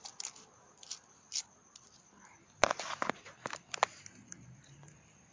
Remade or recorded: recorded